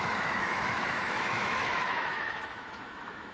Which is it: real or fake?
fake